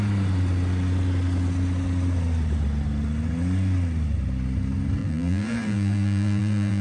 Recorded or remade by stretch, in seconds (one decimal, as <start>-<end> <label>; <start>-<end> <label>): 0.0-5.0 recorded; 5.0-6.8 remade